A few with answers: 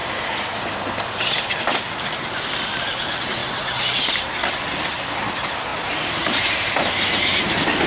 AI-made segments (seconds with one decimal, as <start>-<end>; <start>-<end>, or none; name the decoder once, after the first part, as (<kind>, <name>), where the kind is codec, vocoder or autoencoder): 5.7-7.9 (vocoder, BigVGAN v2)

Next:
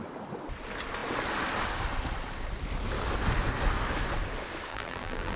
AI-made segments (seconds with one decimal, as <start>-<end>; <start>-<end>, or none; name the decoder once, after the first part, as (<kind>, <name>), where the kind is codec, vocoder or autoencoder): 4.7-5.4 (vocoder, BigVGAN v2)

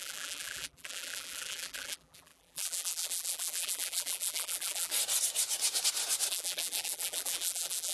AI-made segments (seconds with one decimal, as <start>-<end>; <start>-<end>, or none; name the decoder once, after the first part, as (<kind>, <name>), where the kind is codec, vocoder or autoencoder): 0.0-4.9 (vocoder, BigVGAN v2); 6.3-7.9